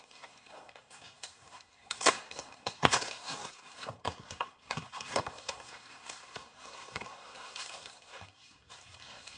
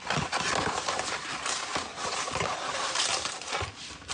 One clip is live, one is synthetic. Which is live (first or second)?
second